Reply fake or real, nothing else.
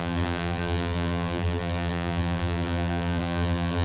fake